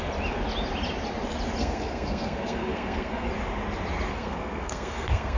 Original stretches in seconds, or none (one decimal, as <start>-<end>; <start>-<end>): 0.0-1.6; 3.3-4.1